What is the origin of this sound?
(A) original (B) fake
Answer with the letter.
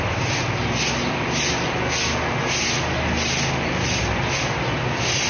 A